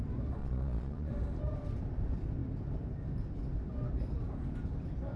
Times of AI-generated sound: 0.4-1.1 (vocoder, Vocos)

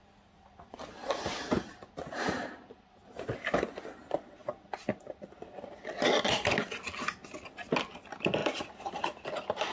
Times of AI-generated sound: none

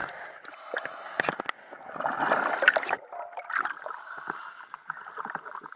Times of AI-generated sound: none

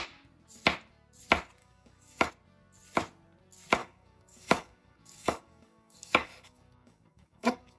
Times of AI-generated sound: 1.6-2.3 (codec, DAC); 3.8-7.8

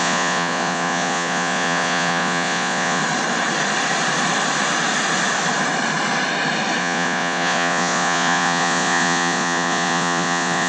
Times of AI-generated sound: 0.0-3.0 (vocoder, Vocos); 6.8-10.7

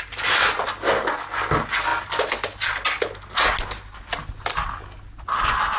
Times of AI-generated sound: none